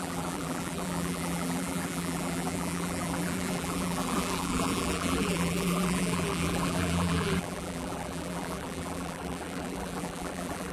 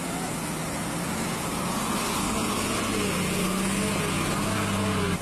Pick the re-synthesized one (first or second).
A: first